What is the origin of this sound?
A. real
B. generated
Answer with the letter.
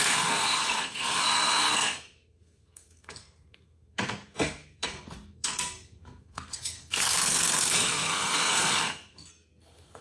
B